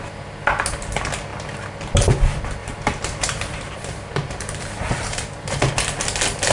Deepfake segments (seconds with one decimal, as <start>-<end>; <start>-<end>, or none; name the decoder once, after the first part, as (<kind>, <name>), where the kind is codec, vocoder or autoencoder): 2.6-5.7 (vocoder, BigVGAN v2)